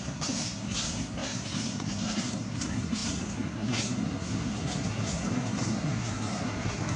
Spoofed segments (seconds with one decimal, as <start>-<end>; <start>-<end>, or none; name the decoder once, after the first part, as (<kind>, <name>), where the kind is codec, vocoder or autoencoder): 0.0-7.0 (codec, SNAC)